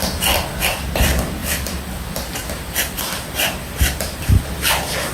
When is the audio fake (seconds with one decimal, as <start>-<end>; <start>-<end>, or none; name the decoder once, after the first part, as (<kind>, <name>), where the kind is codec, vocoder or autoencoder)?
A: 1.4-4.4 (vocoder, BigVGAN v2)